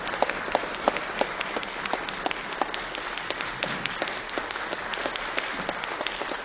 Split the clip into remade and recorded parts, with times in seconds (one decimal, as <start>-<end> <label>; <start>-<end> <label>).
0.0-6.4 recorded